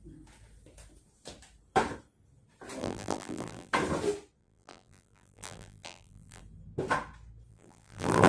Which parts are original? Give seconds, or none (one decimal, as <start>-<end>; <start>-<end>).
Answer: 0.0-2.8; 3.7-4.4; 6.4-7.5